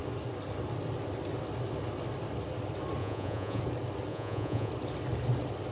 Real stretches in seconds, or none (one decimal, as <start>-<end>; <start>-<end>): 0.0-3.0; 3.6-4.1; 4.7-5.7